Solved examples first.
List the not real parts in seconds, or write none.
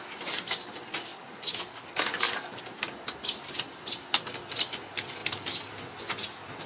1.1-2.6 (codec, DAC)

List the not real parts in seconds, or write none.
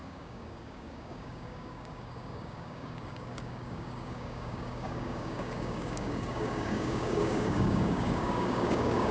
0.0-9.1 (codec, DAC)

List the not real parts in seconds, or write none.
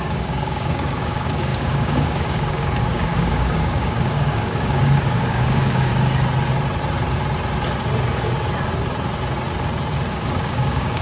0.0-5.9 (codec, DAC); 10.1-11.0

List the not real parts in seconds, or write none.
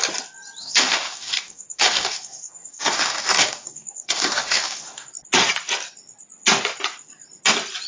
0.6-5.1 (codec, DAC)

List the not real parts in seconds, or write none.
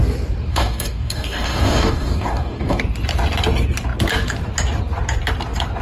0.5-2.8 (codec, DAC)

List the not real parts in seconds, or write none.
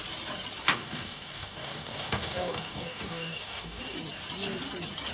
0.7-3.8 (codec, DAC)